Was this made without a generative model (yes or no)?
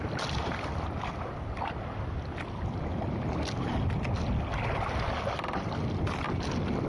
yes